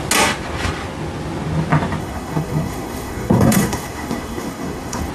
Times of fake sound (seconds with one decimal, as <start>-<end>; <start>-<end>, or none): 2.0-5.1